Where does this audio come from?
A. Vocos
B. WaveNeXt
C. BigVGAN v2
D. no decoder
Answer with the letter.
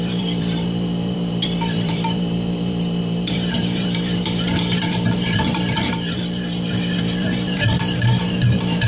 C